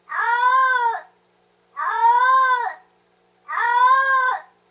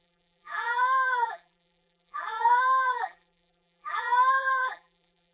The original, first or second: first